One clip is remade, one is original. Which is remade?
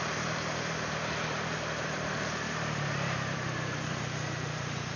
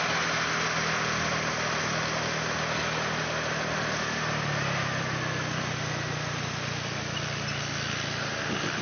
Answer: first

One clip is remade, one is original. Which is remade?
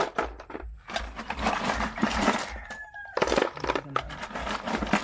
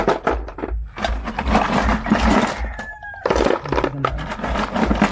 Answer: first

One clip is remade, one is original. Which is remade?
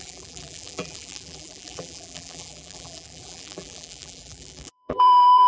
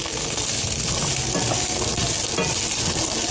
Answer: first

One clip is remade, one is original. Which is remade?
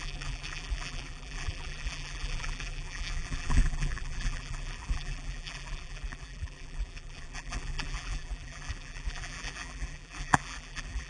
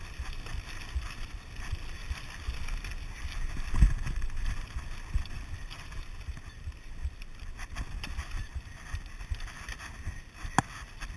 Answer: first